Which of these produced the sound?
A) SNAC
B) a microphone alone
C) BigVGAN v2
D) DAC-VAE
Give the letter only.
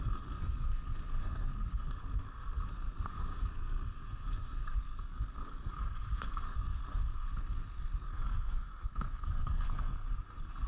A